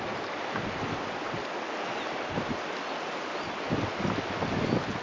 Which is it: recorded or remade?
recorded